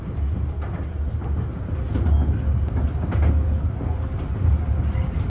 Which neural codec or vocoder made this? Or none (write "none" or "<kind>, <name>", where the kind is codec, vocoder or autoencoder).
none